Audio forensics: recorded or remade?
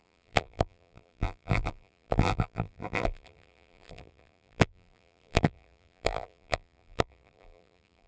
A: remade